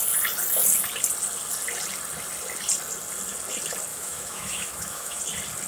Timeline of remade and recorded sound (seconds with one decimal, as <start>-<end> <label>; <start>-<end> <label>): 0.0-3.9 recorded; 3.9-5.2 remade; 5.2-5.7 recorded